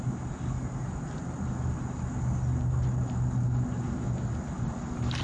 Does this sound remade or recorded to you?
recorded